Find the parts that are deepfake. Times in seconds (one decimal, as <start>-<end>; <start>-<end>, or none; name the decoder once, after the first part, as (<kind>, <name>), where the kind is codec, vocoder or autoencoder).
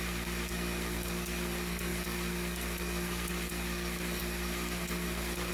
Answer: 0.0-5.5 (codec, SNAC)